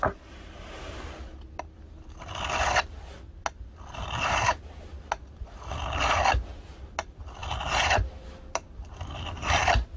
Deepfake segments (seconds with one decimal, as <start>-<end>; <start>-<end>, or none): none